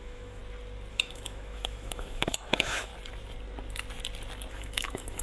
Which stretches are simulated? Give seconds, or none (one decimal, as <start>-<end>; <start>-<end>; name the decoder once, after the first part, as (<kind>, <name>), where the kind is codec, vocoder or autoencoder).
0.0-0.4 (autoencoder, DAC-VAE); 0.9-2.9; 4.5-5.2